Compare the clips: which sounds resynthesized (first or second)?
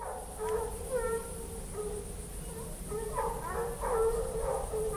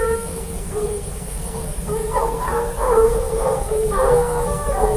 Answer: second